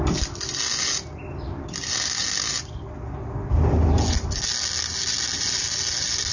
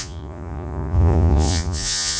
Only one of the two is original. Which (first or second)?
first